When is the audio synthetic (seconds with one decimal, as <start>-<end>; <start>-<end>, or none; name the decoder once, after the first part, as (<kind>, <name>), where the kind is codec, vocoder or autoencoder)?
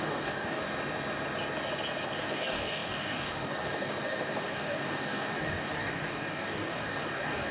0.0-0.6 (codec, DAC); 2.2-7.5